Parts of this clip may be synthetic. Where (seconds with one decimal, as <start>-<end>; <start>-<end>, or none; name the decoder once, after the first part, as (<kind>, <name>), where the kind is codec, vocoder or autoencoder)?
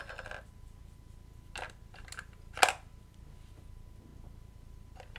none